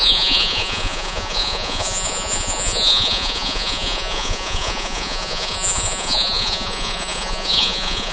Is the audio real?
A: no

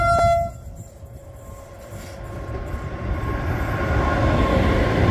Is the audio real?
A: yes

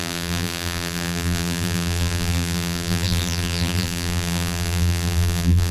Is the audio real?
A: no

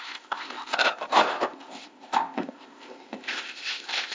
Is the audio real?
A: no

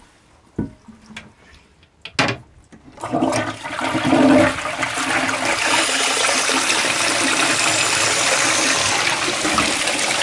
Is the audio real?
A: yes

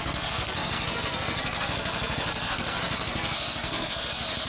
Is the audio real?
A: no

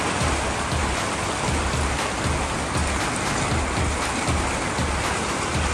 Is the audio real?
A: yes